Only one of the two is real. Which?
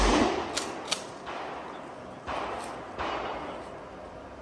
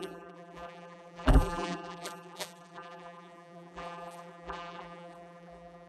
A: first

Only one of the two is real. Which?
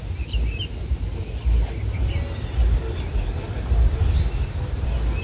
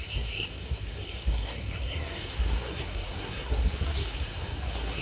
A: first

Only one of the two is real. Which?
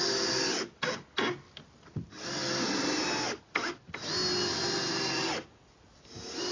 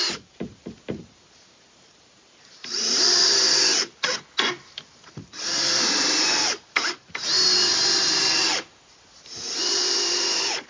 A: first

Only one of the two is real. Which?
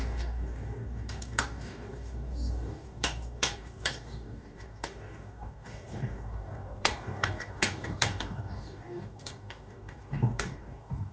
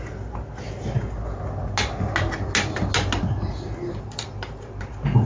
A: second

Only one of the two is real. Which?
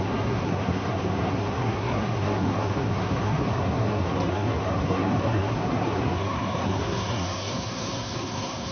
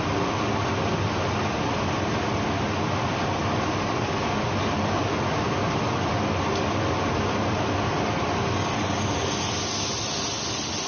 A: second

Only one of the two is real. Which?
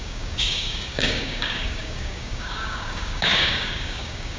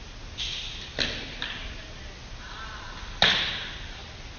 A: second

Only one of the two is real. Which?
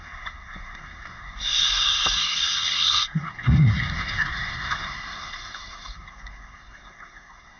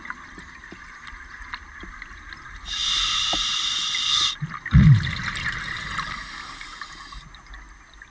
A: second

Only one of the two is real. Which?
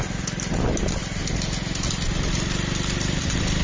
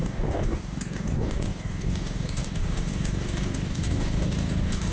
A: first